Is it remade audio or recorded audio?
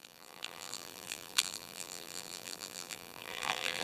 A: remade